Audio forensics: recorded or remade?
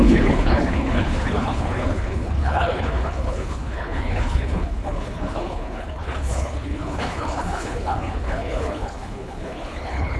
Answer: remade